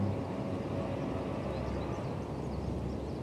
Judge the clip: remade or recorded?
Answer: remade